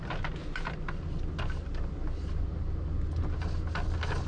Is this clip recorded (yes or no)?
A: yes